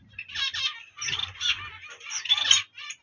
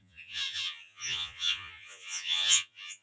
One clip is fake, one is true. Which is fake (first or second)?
second